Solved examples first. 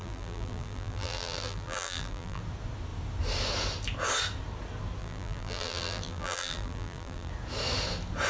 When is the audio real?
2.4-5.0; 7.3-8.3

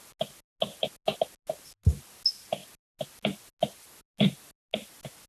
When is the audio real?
0.0-5.3

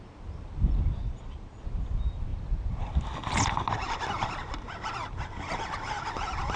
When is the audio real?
0.0-1.0; 1.6-6.6

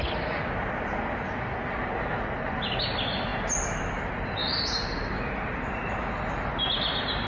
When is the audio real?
0.0-7.3

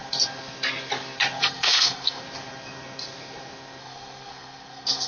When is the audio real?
0.0-1.4; 2.2-3.8